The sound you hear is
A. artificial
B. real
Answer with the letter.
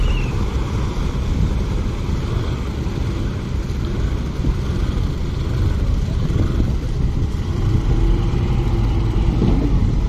A